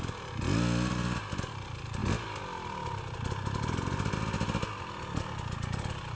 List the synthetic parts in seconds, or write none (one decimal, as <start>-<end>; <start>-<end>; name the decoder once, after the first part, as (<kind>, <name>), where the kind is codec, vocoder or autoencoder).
none